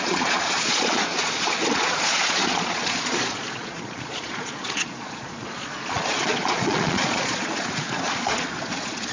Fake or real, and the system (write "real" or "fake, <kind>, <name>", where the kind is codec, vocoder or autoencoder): fake, vocoder, Vocos